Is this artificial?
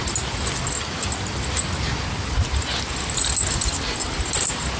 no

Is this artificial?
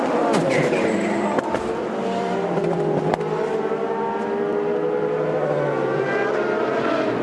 no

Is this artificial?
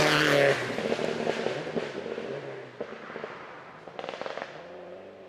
no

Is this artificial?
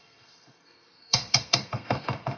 yes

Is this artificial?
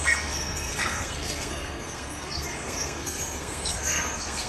yes